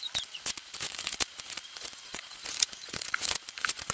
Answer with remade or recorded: remade